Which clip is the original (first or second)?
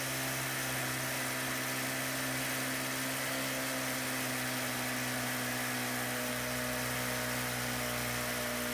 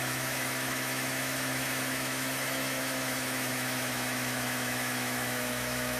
first